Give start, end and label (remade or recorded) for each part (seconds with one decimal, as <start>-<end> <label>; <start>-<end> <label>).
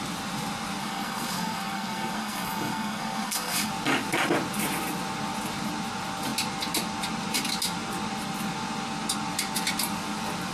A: 0.0-0.8 recorded; 0.8-3.7 remade; 3.7-10.5 recorded